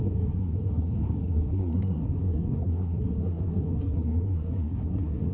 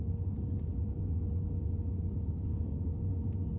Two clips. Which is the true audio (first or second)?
second